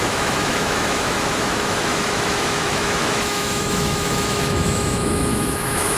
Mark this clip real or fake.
fake